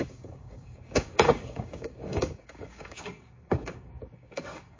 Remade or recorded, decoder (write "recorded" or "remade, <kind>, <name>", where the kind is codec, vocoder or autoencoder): remade, codec, DAC